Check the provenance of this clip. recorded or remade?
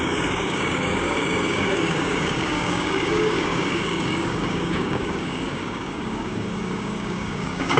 remade